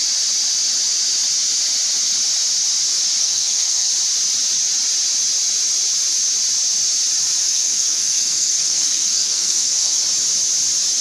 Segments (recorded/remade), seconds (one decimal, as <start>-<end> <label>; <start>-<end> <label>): 0.0-3.2 recorded; 3.2-3.9 remade; 3.9-7.4 recorded; 7.4-10.0 remade; 10.0-11.0 recorded